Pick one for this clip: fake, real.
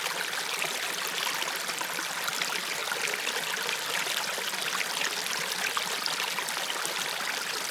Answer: real